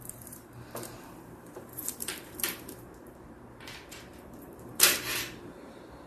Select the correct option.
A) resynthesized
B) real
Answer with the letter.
A